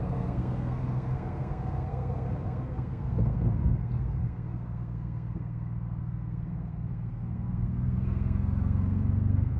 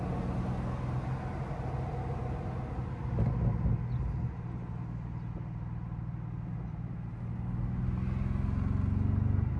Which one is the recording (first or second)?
second